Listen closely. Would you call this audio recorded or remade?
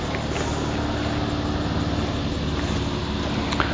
recorded